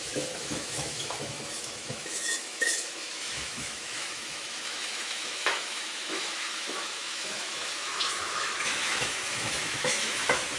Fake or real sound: fake